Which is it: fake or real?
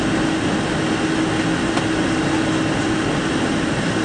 real